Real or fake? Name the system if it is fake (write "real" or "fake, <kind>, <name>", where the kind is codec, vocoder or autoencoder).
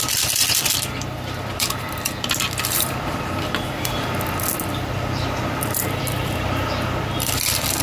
fake, vocoder, BigVGAN v2